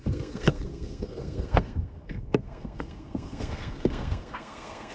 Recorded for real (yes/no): no